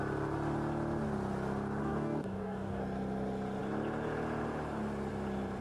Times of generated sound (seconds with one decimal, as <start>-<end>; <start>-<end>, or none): 1.8-2.8